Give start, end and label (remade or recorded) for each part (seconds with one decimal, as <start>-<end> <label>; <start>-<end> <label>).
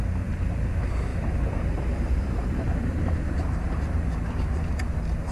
0.0-1.1 recorded; 1.1-4.1 remade; 4.1-5.3 recorded